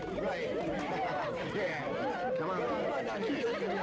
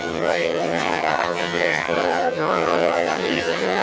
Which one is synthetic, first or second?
second